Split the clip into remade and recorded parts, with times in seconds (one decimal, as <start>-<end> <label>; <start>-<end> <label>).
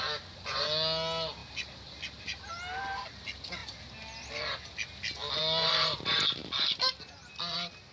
0.0-1.4 recorded; 1.4-2.6 remade; 2.6-5.4 recorded; 5.4-6.2 remade; 6.2-7.9 recorded